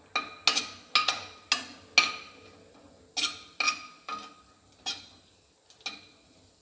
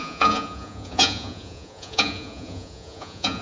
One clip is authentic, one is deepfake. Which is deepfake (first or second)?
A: second